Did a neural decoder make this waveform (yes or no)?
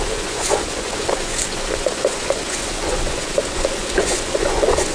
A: yes